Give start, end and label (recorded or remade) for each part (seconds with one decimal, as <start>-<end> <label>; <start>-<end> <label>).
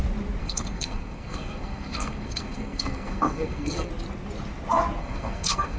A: 0.0-0.4 recorded; 0.4-3.9 remade; 3.9-5.0 recorded; 5.0-5.8 remade